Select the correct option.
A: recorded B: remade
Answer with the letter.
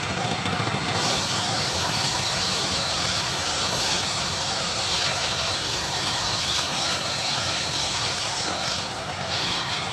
B